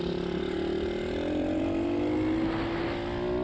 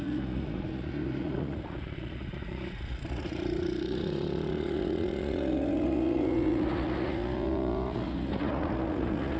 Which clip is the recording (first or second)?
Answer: first